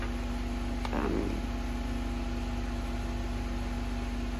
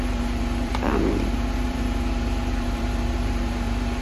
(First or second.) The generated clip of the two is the second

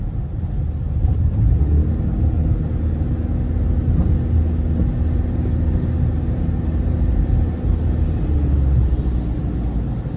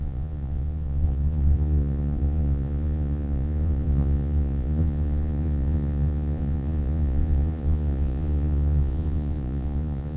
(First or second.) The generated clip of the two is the second